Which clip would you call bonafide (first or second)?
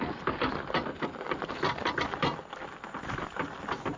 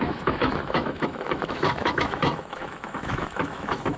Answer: first